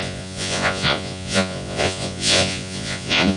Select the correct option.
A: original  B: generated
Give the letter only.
B